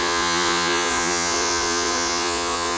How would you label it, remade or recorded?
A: remade